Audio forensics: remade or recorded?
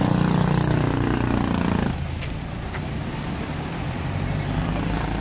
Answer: recorded